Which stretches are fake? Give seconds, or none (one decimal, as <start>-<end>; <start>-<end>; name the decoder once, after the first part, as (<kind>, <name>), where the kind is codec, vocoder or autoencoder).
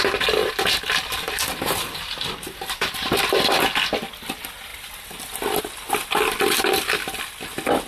0.4-3.2 (vocoder, BigVGAN v2)